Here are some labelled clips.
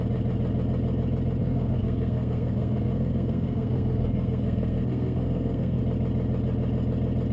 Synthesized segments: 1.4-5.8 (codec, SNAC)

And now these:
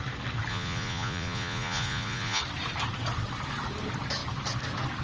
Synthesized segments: 0.5-2.4 (vocoder, Vocos)